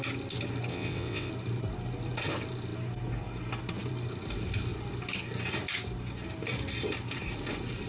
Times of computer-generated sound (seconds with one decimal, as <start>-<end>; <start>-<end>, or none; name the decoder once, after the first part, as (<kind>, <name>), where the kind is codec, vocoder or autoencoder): 0.7-1.3 (vocoder, WaveNeXt)